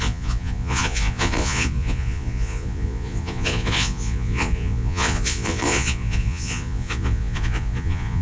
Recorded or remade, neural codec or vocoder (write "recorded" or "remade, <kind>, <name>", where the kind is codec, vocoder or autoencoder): remade, vocoder, Vocos